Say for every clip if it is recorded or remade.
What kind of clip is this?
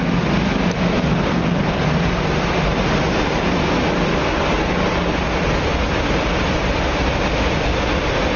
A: recorded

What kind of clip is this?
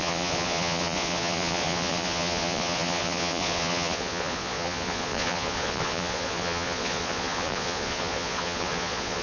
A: remade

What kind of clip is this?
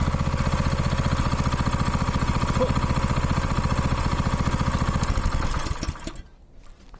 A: recorded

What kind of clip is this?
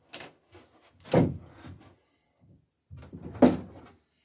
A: recorded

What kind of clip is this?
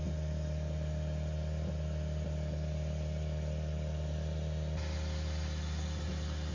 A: recorded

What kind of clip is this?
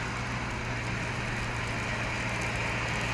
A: recorded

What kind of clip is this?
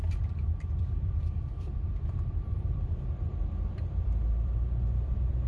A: remade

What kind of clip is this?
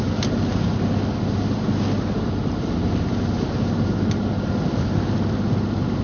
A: recorded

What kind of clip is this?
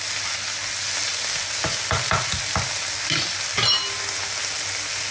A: recorded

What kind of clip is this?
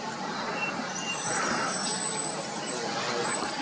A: recorded